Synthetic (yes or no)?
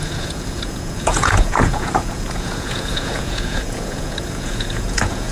yes